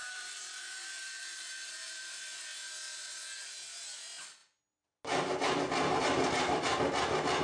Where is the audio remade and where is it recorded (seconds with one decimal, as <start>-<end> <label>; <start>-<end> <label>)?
0.0-2.4 remade; 2.4-7.4 recorded